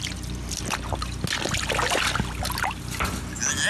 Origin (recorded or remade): recorded